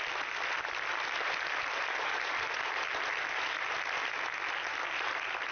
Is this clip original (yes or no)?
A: yes